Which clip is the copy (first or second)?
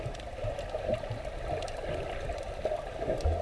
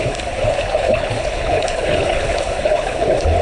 second